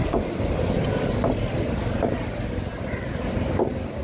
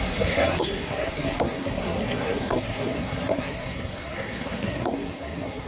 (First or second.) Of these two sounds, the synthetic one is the second